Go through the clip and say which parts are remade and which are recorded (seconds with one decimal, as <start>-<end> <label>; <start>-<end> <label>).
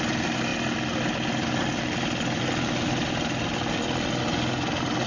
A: 0.0-5.1 recorded